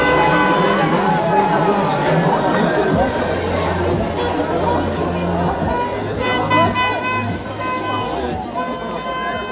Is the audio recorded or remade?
recorded